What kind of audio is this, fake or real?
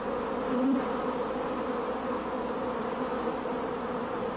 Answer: real